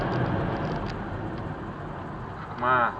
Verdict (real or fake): real